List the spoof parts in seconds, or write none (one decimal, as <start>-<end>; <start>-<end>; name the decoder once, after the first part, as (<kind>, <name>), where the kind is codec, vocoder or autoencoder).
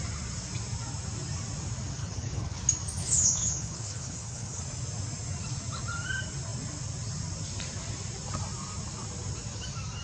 2.0-2.6 (codec, HILCodec); 3.0-4.6